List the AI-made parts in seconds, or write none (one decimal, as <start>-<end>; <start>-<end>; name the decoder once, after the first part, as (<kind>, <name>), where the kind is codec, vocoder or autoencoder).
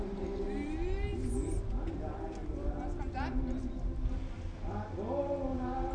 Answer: none